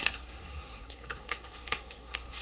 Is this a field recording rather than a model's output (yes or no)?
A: no